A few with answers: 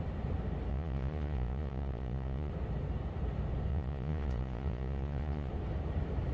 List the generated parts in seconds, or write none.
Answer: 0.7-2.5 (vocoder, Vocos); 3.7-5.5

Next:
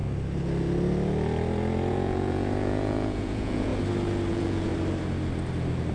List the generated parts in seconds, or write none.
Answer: 1.9-3.7 (vocoder, Vocos); 4.3-4.7

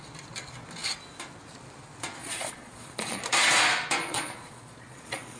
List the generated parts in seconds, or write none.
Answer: 2.2-3.2 (vocoder, Vocos); 4.0-5.4

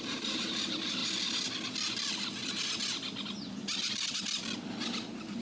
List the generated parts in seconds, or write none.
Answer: none

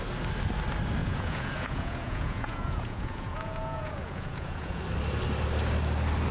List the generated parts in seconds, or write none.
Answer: 1.0-4.8 (vocoder, Vocos)

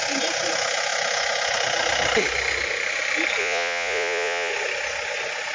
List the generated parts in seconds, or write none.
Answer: 3.4-4.5 (vocoder, Vocos)

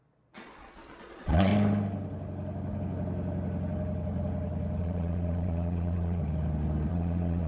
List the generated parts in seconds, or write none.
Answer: 0.0-1.5 (vocoder, Vocos); 4.8-6.2; 6.9-7.5